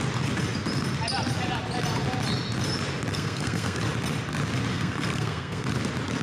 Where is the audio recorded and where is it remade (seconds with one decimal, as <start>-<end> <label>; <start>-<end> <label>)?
0.0-3.1 recorded; 3.1-3.8 remade; 3.8-4.7 recorded; 4.7-5.7 remade; 5.7-6.2 recorded